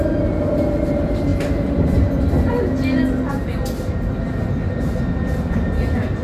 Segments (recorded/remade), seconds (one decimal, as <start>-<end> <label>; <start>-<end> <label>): 0.0-6.2 recorded